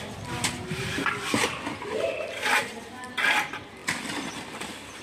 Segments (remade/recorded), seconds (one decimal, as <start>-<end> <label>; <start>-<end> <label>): 0.0-3.8 recorded; 3.8-5.0 remade